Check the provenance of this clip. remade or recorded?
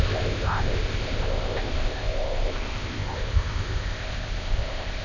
remade